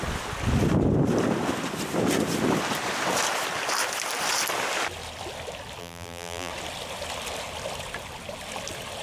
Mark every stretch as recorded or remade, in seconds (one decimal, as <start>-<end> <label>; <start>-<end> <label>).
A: 0.0-5.8 recorded; 5.8-6.5 remade; 6.5-9.0 recorded